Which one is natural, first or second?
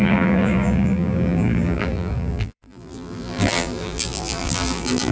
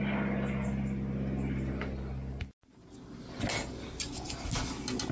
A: second